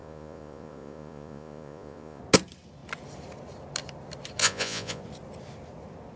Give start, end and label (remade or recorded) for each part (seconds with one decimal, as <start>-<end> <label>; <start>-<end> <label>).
0.0-2.2 remade; 2.2-4.4 recorded; 4.4-5.0 remade; 5.0-6.2 recorded